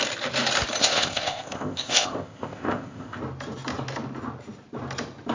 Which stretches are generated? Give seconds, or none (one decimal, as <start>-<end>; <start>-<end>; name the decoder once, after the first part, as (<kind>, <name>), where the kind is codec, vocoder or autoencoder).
0.8-3.2 (codec, ZipCodec)